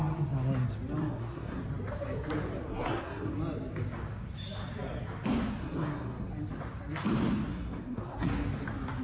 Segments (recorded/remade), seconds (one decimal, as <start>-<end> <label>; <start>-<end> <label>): 0.0-1.0 recorded; 1.0-1.6 remade; 1.6-2.7 recorded; 2.7-3.3 remade; 3.3-5.6 recorded; 5.6-6.3 remade; 6.3-7.5 recorded; 7.5-8.3 remade; 8.3-9.0 recorded